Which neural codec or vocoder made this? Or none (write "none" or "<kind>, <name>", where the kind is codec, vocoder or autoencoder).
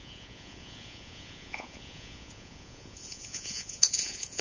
vocoder, Vocos